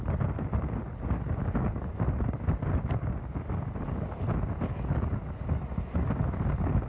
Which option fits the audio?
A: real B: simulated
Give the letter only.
A